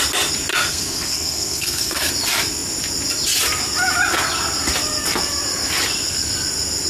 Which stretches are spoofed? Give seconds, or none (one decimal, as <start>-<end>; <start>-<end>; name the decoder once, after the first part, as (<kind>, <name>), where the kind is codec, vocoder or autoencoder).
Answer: 0.5-2.1 (codec, SNAC)